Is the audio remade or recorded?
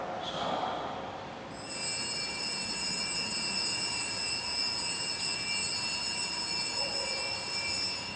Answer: recorded